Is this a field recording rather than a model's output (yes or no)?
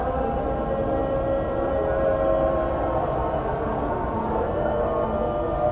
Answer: yes